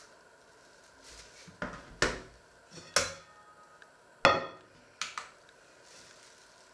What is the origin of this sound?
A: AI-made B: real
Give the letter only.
B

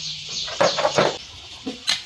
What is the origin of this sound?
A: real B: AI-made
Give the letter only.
A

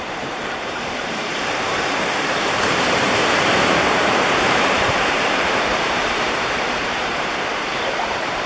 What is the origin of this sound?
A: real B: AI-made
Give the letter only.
B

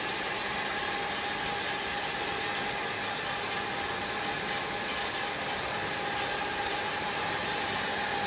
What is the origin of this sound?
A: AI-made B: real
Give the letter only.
B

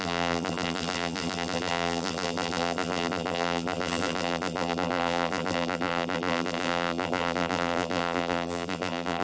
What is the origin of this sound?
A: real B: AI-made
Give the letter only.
B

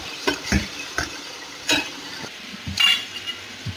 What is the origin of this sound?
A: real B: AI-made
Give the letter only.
B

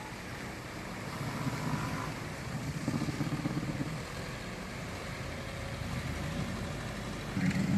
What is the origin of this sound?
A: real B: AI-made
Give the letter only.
A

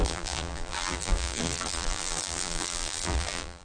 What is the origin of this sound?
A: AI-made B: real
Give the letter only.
A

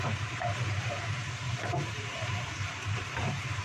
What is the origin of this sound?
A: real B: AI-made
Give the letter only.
B